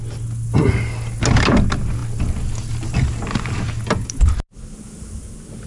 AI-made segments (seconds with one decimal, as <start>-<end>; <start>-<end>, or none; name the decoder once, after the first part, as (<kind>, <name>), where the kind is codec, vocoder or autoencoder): none